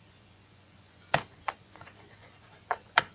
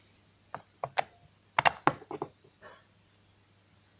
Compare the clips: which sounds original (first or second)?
second